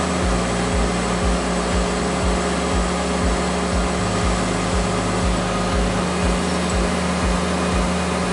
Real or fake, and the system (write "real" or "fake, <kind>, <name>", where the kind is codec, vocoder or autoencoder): real